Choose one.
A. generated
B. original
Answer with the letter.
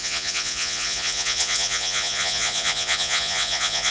A